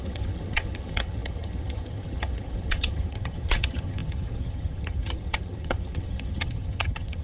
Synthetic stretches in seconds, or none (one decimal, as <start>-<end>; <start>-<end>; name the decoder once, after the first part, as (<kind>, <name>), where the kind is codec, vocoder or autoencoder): 0.0-7.2 (vocoder, HiFi-GAN)